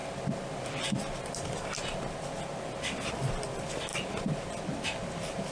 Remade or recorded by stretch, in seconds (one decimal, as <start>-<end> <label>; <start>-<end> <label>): 0.0-3.3 recorded; 3.3-5.5 remade

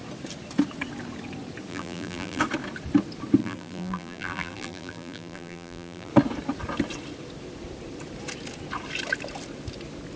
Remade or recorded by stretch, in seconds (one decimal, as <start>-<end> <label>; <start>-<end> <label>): 0.0-1.7 recorded; 1.7-2.4 remade; 2.4-3.4 recorded; 3.4-6.1 remade; 6.1-10.2 recorded

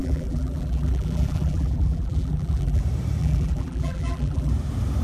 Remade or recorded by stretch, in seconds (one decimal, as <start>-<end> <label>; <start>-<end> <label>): 0.0-2.8 remade; 2.8-3.2 recorded; 3.2-4.5 remade; 4.5-5.0 recorded